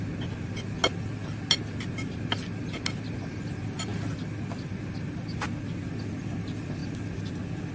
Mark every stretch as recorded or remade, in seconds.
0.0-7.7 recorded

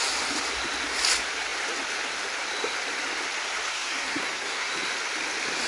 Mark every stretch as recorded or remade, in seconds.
0.0-3.7 recorded; 3.7-4.7 remade; 4.7-5.7 recorded

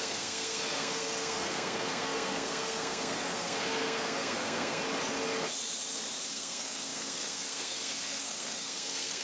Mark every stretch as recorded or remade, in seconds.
0.0-4.8 remade; 4.8-6.3 recorded; 6.3-9.2 remade

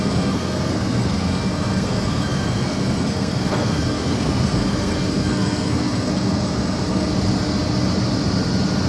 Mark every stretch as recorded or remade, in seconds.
0.0-7.1 remade; 7.1-8.9 recorded

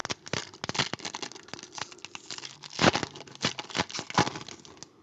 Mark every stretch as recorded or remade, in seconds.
0.0-5.0 recorded

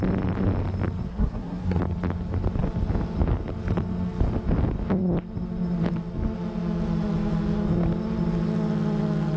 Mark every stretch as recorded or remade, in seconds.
0.0-1.1 recorded; 1.1-1.8 remade; 1.8-9.4 recorded